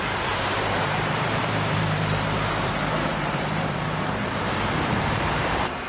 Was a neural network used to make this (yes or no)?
yes